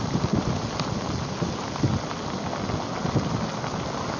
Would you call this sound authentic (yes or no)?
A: yes